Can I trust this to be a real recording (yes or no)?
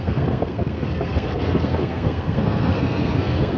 no